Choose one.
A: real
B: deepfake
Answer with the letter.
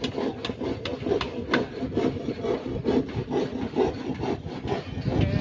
A